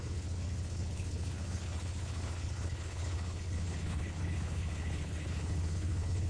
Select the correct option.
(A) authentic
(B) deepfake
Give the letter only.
B